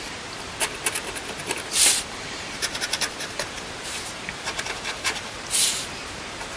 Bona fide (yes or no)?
no